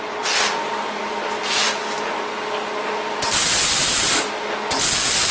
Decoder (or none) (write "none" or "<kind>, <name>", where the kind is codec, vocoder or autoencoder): none